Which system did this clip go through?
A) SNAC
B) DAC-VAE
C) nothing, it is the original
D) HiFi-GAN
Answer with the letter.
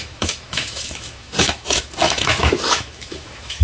B